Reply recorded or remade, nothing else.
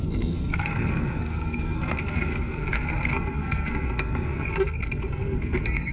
remade